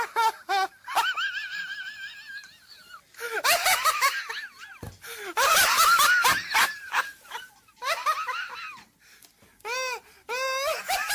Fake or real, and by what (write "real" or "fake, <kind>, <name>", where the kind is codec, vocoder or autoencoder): real